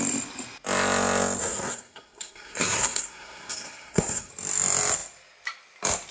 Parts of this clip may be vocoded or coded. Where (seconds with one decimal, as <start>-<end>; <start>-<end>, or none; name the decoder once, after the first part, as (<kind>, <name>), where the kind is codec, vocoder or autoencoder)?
1.4-4.3 (codec, SNAC)